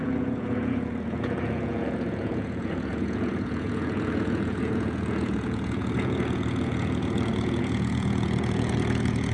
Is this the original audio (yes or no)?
no